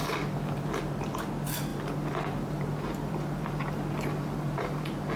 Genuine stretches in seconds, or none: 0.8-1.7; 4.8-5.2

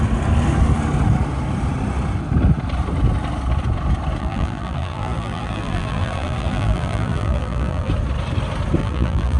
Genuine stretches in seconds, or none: 0.0-4.2; 7.9-8.8